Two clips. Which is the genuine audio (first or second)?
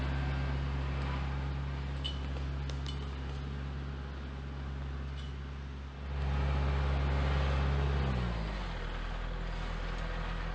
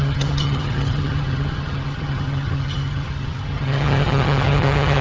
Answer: first